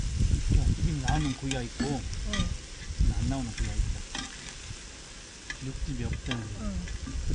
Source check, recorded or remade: recorded